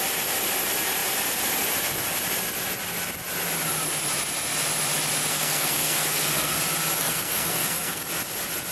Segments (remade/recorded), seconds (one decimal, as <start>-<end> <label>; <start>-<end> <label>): 0.0-5.3 recorded; 5.3-6.6 remade; 6.6-7.0 recorded; 7.0-8.0 remade; 8.0-8.7 recorded